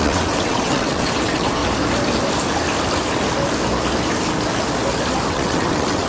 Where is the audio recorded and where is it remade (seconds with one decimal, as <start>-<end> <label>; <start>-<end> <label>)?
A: 0.0-1.6 remade; 1.6-5.3 recorded; 5.3-6.1 remade